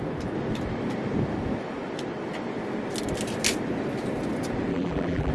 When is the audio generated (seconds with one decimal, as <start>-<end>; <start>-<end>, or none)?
4.7-5.3